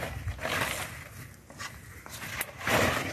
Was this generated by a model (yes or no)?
no